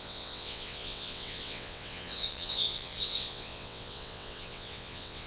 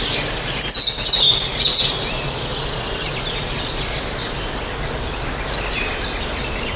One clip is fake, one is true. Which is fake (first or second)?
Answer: first